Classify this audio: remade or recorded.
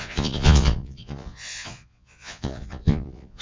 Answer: remade